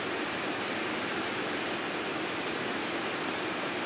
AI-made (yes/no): no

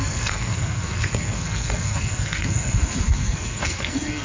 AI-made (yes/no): yes